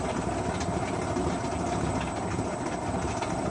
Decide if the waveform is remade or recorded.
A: recorded